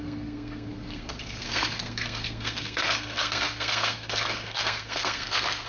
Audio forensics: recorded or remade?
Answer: remade